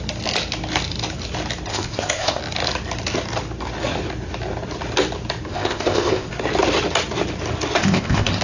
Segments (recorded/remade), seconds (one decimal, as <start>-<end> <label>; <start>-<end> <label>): 0.0-1.7 recorded; 1.7-2.4 remade; 2.4-5.5 recorded; 5.5-6.3 remade; 6.3-7.8 recorded; 7.8-8.4 remade